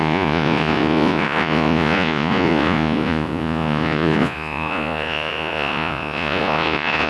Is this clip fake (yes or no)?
yes